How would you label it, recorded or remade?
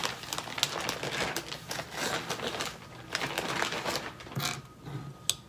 recorded